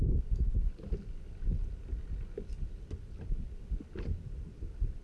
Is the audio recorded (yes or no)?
yes